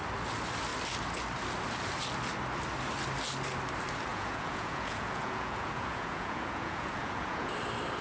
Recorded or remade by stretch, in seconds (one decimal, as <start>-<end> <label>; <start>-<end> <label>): 0.0-4.1 recorded; 4.1-7.5 remade; 7.5-8.0 recorded